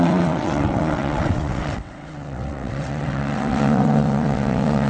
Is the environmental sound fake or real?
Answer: fake